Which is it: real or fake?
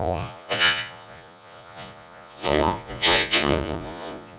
fake